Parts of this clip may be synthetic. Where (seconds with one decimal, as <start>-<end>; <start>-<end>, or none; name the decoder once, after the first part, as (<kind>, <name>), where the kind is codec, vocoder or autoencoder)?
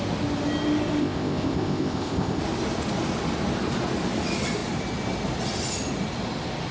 1.0-2.4 (codec, ZipCodec)